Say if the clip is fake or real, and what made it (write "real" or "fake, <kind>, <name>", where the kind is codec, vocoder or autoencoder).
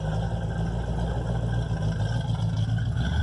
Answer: real